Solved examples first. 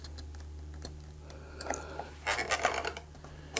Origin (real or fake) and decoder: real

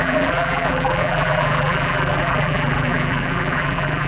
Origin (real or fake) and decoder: fake, vocoder, BigVGAN v2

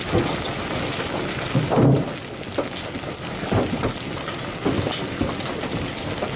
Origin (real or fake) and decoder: real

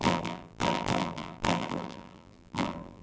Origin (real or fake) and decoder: fake, vocoder, BigVGAN v2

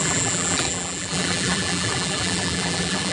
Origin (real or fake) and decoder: fake, vocoder, BigVGAN v2